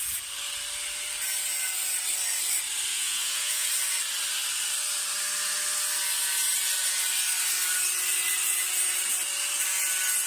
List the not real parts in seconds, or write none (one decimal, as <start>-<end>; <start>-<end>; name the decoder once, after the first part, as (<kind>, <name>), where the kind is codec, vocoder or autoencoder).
2.9-3.7 (vocoder, Vocos)

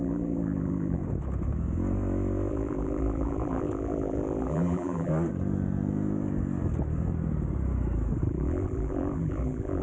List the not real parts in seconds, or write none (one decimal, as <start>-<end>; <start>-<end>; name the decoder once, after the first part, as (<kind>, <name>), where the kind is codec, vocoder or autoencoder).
0.0-1.0 (vocoder, BigVGAN v2); 2.5-5.1; 8.2-9.8

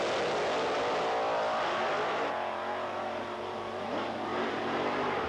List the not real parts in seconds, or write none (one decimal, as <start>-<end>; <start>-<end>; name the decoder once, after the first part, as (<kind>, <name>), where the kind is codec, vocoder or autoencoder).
3.2-5.3 (vocoder, BigVGAN v2)

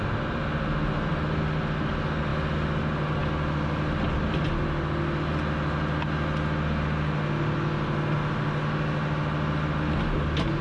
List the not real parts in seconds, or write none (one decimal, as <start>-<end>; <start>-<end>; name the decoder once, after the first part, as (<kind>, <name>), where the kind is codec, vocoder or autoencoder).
none

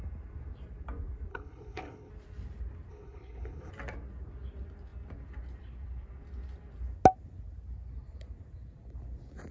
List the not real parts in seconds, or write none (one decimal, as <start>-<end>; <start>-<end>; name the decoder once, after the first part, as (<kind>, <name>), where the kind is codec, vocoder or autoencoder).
1.3-2.1 (codec, HILCodec); 2.9-3.7

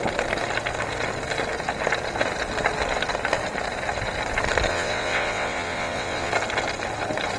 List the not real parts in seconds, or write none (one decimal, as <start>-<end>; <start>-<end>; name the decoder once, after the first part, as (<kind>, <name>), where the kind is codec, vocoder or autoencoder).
4.7-6.3 (vocoder, WaveNeXt)

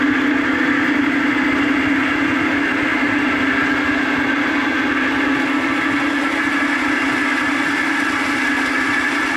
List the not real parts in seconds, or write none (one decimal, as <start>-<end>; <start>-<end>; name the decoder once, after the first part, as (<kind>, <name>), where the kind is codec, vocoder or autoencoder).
none